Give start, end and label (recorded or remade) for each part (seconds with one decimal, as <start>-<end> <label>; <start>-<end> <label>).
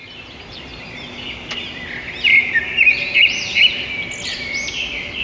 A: 0.0-5.2 recorded